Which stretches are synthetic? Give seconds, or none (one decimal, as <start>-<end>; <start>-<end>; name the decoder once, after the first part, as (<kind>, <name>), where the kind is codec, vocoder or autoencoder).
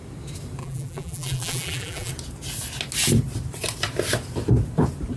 0.6-2.1 (vocoder, BigVGAN v2)